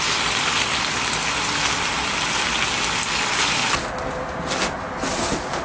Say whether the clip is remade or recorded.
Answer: recorded